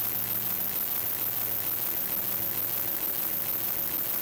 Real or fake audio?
real